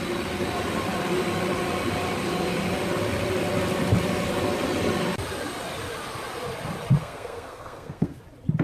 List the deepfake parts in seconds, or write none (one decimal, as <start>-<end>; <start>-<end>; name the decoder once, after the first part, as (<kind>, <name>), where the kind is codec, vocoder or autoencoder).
7.0-8.2 (codec, SNAC)